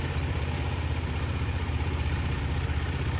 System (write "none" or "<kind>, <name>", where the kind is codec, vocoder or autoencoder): vocoder, BigVGAN v2